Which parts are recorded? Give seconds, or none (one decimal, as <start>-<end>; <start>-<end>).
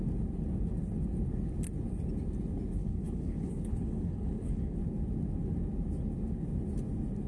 0.0-2.8; 4.8-7.3